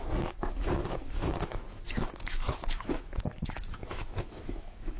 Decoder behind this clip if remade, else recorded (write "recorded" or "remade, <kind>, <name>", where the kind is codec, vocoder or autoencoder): remade, autoencoder, DAC-VAE